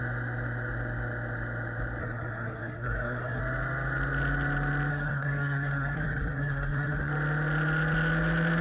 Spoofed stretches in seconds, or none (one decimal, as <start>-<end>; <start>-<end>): 2.0-3.4; 4.9-7.1